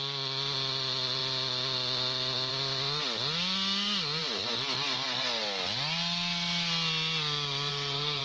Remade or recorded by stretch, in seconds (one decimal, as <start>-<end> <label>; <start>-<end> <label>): 0.0-7.7 recorded; 7.7-8.2 remade